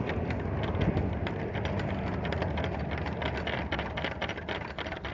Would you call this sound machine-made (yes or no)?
no